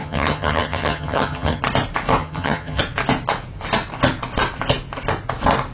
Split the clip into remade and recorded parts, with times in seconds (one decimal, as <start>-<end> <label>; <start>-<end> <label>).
0.0-1.6 remade; 1.6-2.2 recorded; 2.2-2.8 remade; 2.8-5.7 recorded